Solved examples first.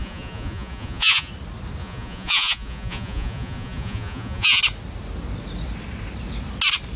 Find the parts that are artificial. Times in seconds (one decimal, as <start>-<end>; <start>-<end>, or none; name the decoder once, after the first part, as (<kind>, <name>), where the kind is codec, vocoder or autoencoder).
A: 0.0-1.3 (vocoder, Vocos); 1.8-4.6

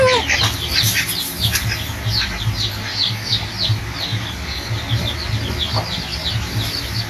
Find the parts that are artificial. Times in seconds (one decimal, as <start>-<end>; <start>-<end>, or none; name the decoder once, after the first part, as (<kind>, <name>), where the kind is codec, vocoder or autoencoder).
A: 2.9-3.5 (codec, DAC); 4.1-4.7

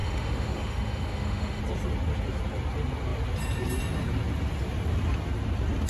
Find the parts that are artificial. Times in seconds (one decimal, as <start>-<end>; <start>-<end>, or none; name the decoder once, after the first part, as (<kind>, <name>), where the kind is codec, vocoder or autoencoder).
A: 0.0-1.6 (autoencoder, DAC-VAE)